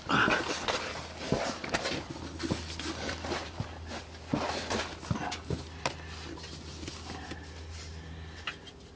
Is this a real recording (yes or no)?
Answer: yes